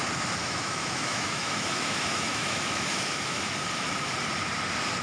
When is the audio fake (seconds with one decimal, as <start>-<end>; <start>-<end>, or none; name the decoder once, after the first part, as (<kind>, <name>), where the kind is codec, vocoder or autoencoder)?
0.4-3.4 (autoencoder, DAC-VAE)